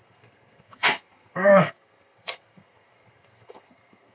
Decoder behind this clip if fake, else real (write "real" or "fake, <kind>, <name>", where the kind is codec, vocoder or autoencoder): fake, codec, SNAC